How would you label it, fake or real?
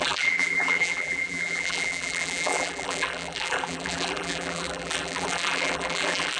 fake